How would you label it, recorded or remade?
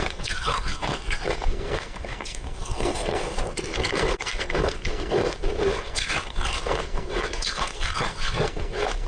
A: remade